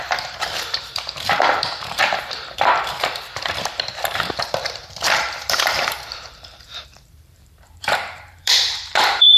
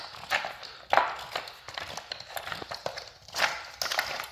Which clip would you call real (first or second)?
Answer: second